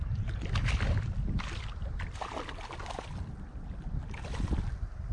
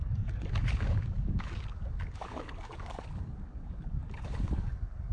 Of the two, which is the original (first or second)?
first